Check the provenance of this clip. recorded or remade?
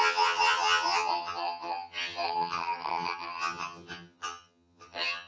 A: remade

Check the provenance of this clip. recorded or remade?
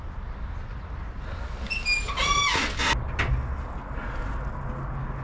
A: recorded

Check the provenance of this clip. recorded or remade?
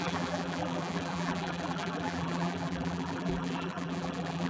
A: remade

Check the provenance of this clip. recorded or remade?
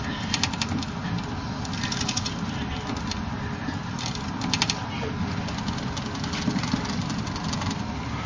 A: recorded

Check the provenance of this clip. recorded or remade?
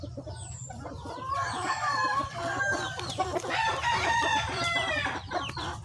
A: remade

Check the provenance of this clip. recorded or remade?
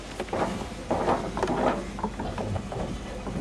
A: recorded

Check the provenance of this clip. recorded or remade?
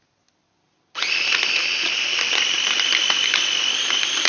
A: recorded